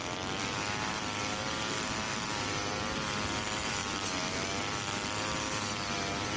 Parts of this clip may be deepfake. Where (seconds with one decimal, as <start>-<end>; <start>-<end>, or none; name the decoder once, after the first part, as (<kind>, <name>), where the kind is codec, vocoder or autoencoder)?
none